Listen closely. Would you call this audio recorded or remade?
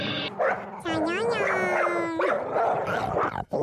recorded